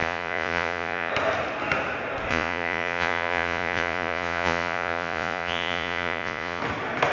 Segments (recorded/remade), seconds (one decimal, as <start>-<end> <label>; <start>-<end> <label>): 0.0-1.1 remade; 1.1-2.3 recorded; 2.3-6.6 remade; 6.6-7.1 recorded